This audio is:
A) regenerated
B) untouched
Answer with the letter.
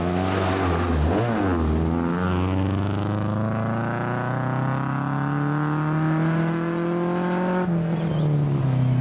B